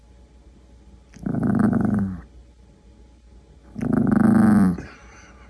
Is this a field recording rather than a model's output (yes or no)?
yes